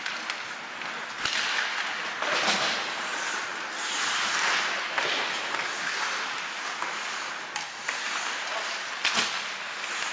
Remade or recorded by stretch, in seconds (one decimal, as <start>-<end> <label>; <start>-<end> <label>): 0.0-10.1 recorded